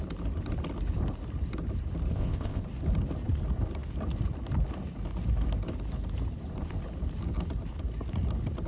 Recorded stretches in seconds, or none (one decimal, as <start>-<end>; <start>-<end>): 0.0-2.1; 2.6-8.7